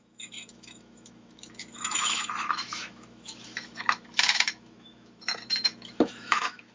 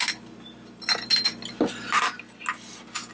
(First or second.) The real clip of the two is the second